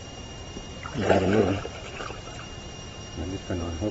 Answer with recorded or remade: remade